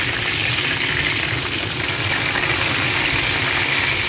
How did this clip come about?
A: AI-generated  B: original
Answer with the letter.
B